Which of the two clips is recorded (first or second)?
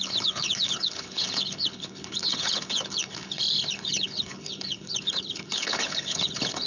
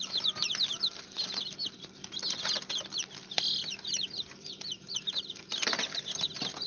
second